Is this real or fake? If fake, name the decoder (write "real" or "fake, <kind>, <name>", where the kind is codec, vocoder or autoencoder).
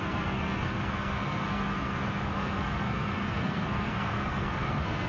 fake, codec, SNAC